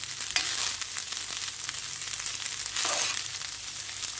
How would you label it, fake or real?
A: real